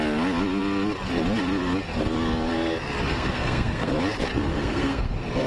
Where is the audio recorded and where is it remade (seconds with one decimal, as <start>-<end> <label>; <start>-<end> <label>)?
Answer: 0.0-3.1 recorded; 3.1-3.9 remade; 3.9-4.5 recorded; 4.5-5.1 remade; 5.1-5.5 recorded